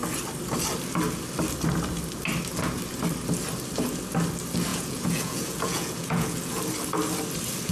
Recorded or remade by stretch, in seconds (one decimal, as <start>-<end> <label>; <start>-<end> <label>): 0.0-4.7 recorded; 4.7-6.6 remade; 6.6-7.7 recorded